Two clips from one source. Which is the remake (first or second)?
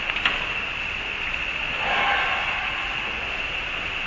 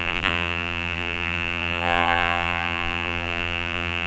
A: second